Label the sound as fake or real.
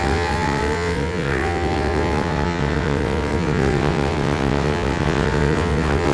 fake